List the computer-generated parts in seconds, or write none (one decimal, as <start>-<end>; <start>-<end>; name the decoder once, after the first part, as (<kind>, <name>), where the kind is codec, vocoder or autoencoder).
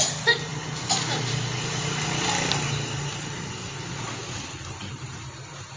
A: none